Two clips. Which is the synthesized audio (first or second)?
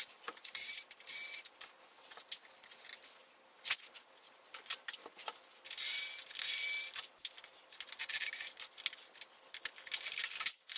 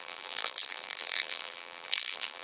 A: second